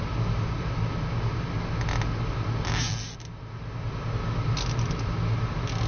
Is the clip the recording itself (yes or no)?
yes